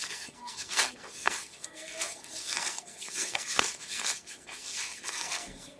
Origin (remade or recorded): remade